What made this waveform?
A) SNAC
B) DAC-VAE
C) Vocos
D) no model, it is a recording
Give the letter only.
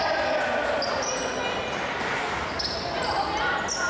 D